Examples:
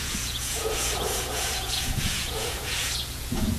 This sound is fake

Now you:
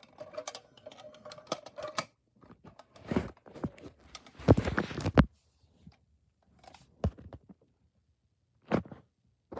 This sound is real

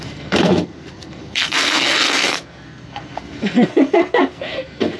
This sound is fake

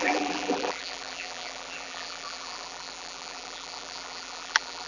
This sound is fake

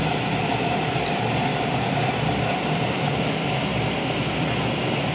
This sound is fake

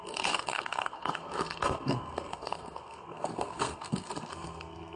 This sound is fake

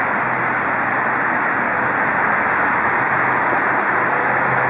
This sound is real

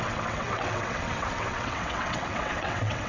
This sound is fake